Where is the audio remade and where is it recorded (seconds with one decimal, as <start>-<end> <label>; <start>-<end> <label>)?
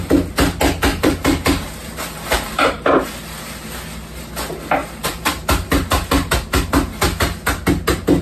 0.0-0.9 recorded; 0.9-3.1 remade; 3.1-4.8 recorded; 4.8-6.3 remade; 6.3-8.2 recorded